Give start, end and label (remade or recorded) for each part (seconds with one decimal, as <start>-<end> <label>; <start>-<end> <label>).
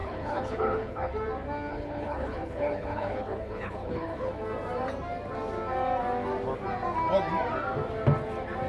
0.0-1.1 remade; 1.1-1.7 recorded; 1.7-4.3 remade; 4.3-8.7 recorded